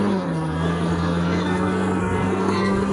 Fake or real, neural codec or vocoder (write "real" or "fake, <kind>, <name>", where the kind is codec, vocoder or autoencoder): fake, codec, SNAC